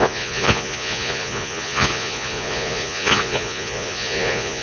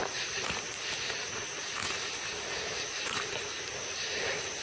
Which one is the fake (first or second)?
first